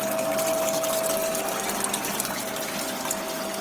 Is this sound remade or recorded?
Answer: recorded